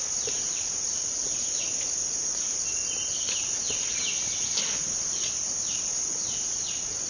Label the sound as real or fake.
real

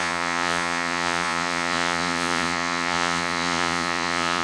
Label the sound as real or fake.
fake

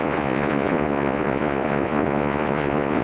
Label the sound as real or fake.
fake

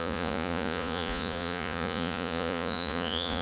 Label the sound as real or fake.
fake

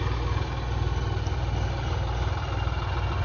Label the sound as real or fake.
real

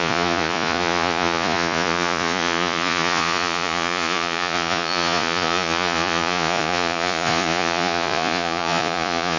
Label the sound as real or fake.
fake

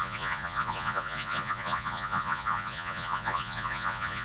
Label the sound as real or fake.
fake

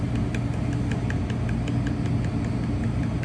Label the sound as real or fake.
real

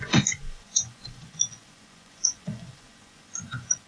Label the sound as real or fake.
fake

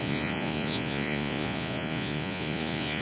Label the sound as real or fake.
fake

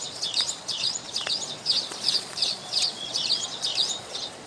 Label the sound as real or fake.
fake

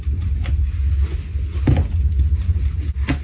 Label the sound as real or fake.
real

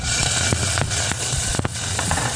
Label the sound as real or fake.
fake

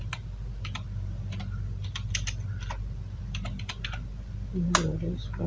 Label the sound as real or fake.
real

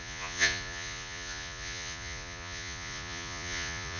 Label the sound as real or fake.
fake